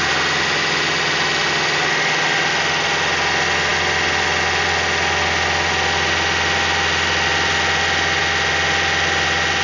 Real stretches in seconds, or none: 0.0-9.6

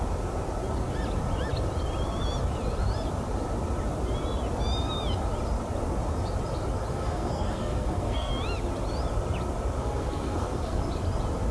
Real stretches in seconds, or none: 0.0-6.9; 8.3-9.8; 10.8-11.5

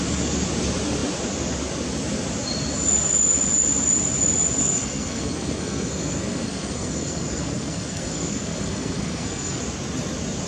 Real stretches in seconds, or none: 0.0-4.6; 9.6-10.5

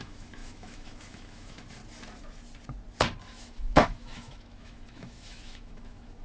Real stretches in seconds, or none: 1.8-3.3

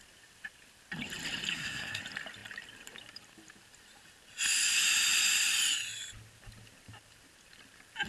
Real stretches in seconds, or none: 0.0-1.5; 2.0-8.1

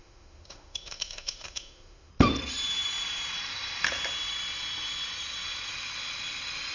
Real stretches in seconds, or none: 2.1-6.7